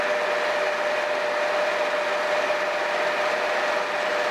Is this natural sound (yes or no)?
yes